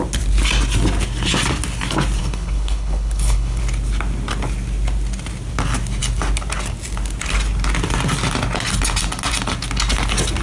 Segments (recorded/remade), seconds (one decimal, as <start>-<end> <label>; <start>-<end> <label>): 0.0-2.2 recorded; 2.2-3.6 remade; 3.6-10.4 recorded

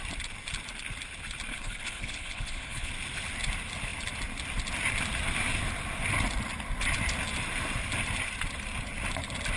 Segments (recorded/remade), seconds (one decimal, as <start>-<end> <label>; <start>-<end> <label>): 0.0-1.5 recorded; 1.5-2.9 remade; 2.9-9.6 recorded

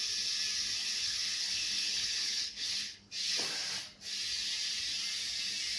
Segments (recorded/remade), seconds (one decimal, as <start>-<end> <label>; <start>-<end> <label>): 0.0-0.8 recorded; 0.8-3.1 remade; 3.1-5.8 recorded

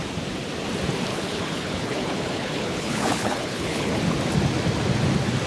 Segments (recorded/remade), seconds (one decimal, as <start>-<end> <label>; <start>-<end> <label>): 0.0-1.1 recorded; 1.1-4.0 remade; 4.0-5.5 recorded

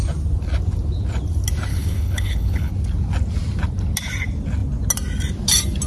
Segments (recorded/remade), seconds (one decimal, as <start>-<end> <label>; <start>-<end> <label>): 0.0-1.7 recorded; 1.7-2.7 remade; 2.7-5.9 recorded